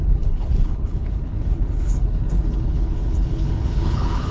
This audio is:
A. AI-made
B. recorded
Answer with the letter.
A